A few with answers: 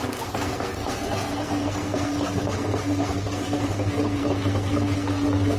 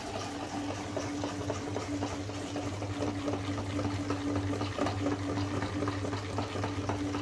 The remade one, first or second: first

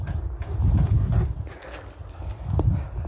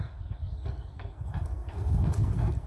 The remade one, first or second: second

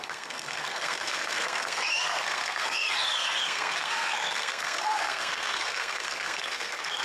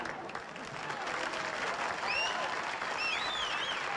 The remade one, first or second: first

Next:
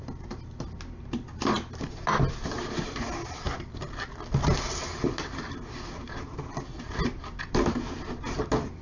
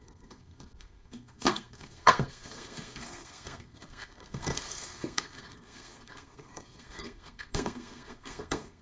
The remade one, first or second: second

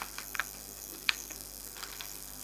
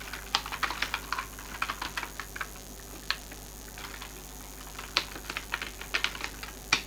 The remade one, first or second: first